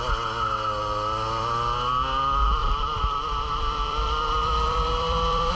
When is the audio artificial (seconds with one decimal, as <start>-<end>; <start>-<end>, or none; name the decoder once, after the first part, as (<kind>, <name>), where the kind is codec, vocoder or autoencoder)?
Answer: 2.6-5.5 (vocoder, BigVGAN v2)